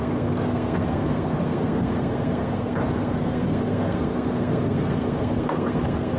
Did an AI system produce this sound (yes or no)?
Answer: yes